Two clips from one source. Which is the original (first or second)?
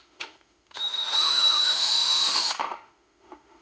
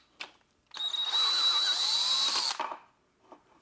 second